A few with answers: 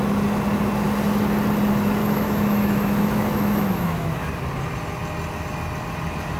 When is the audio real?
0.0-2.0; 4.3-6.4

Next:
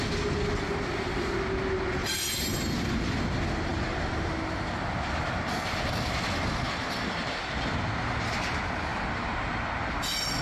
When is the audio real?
0.0-2.0; 2.9-3.7; 4.3-10.4

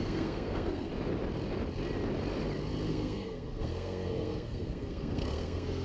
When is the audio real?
0.9-2.9

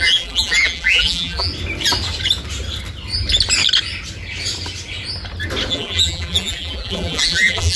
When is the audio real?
1.5-5.7